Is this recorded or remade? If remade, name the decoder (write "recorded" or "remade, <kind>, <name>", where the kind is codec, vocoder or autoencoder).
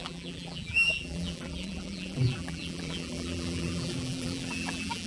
remade, vocoder, BigVGAN v2